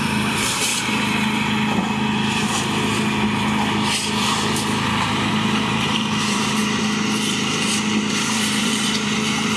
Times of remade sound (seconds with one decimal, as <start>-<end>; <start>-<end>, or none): 0.0-0.7; 5.3-6.6; 8.1-9.6